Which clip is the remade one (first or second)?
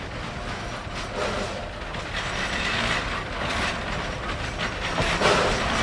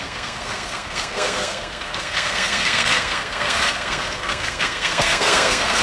second